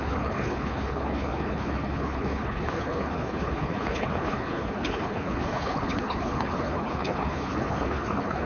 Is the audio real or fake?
fake